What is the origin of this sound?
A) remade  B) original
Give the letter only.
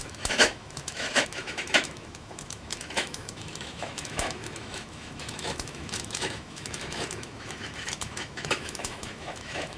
A